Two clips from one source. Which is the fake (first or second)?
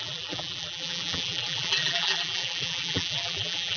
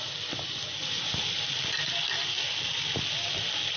first